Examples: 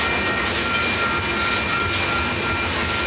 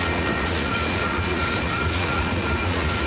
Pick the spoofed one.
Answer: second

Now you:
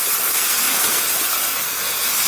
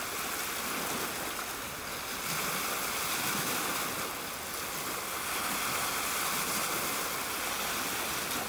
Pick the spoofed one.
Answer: first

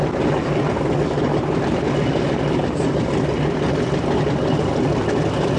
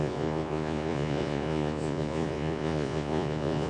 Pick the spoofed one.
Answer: second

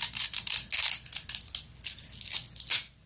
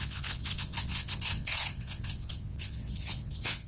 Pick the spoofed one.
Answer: second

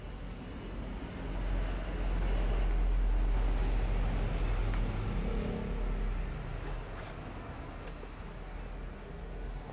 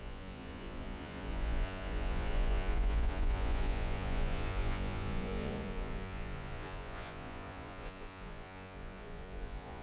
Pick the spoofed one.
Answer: second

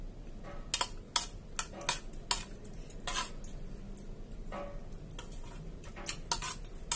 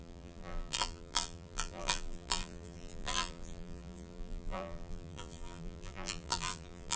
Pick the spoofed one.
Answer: second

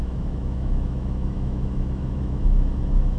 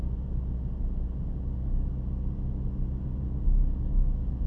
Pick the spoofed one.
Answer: first